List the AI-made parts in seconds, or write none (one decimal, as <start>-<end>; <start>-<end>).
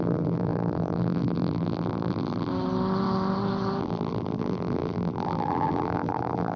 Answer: 0.0-2.5; 3.8-6.6